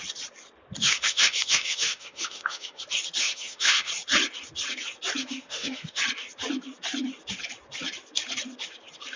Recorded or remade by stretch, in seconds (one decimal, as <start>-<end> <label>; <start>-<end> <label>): 0.0-0.8 recorded; 0.8-2.8 remade; 2.8-3.2 recorded; 3.2-3.9 remade; 3.9-5.2 recorded; 5.2-6.0 remade; 6.0-9.2 recorded